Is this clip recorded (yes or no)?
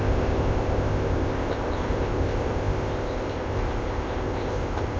no